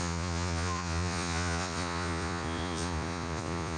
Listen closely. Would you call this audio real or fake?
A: fake